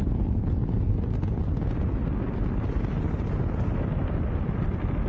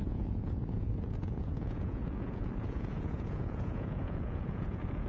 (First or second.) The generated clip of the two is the second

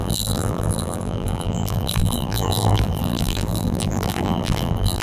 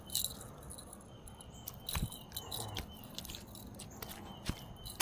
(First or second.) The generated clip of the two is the first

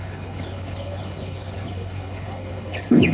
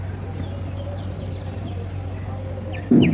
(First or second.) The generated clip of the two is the first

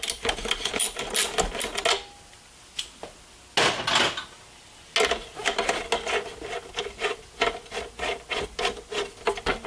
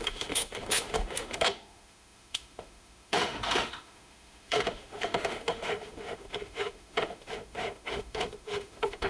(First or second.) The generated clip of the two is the second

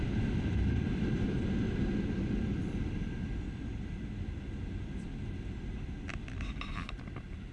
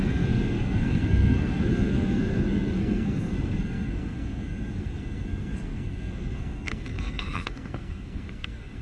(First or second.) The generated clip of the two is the second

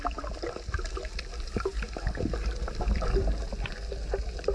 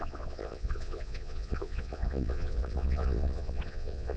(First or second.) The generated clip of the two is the second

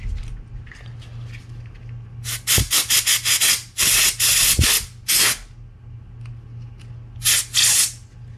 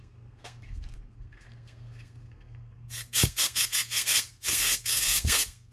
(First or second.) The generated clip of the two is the second